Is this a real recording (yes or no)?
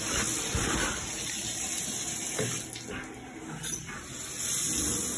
yes